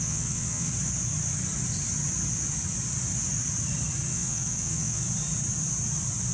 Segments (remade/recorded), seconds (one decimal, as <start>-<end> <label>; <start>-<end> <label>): 0.0-0.7 remade; 0.7-4.1 recorded; 4.1-5.0 remade; 5.0-6.3 recorded